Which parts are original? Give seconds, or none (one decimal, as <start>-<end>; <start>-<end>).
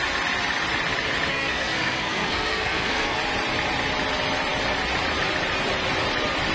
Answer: 0.0-1.3; 3.2-6.5